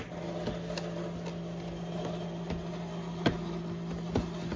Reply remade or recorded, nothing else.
recorded